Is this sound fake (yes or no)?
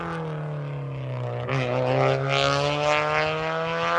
no